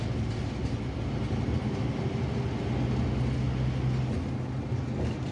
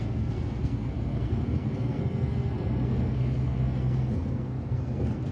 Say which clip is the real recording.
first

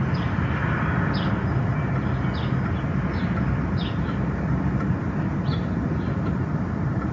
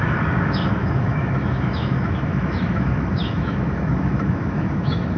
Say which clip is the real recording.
first